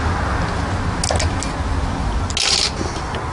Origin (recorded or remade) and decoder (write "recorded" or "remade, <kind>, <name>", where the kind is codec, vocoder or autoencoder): recorded